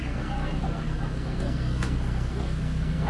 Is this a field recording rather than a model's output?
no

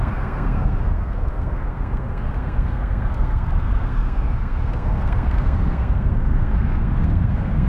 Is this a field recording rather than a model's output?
no